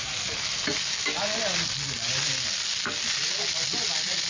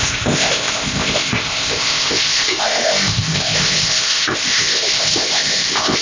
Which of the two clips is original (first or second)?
first